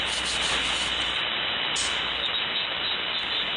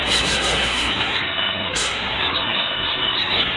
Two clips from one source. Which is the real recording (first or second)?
first